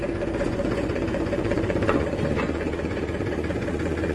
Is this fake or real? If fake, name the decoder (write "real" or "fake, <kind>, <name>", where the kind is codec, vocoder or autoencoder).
fake, vocoder, Vocos